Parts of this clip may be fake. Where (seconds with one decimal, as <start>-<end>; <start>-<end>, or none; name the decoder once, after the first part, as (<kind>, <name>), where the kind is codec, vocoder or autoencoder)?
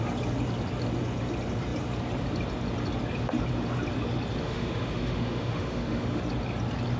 4.4-6.2 (autoencoder, DAC-VAE)